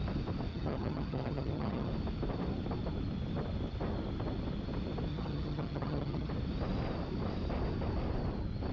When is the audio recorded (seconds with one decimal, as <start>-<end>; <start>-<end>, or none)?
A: 0.0-0.5; 1.9-5.1; 6.3-8.7